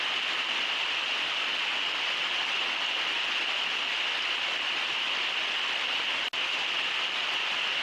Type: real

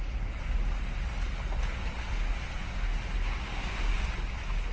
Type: real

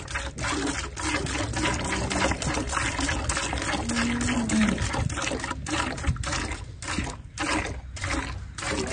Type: real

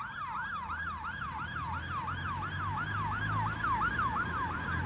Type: real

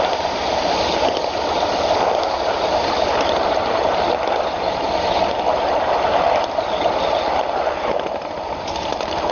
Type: real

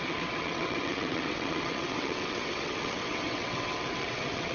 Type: fake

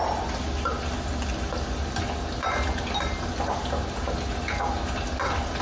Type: real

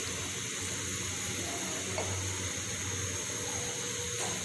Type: real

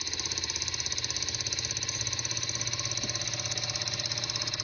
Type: real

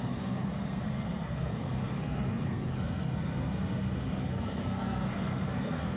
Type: fake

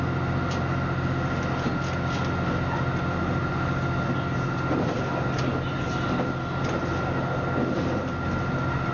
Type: real